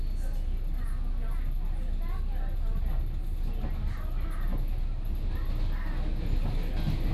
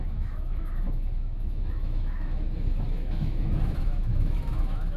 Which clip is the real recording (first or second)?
first